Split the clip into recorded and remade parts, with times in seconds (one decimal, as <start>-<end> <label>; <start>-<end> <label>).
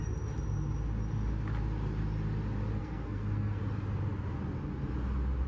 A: 0.0-2.8 recorded; 2.8-3.6 remade; 3.6-5.5 recorded